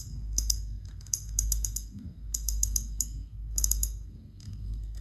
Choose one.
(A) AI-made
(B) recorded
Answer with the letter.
A